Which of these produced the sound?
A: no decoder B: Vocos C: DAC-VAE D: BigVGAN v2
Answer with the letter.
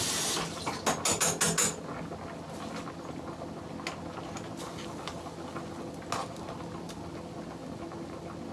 A